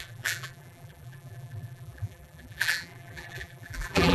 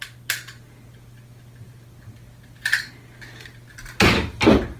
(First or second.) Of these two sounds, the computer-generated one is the first